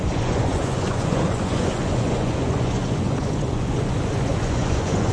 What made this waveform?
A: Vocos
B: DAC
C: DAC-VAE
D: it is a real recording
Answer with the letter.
A